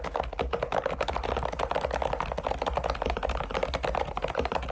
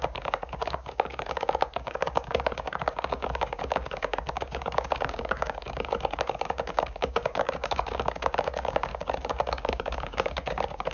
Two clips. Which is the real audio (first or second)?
first